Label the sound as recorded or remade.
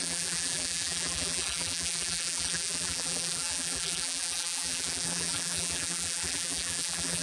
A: remade